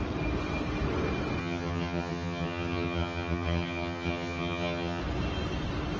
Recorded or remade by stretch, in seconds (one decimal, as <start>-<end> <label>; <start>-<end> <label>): 0.0-1.4 recorded; 1.4-5.0 remade; 5.0-6.0 recorded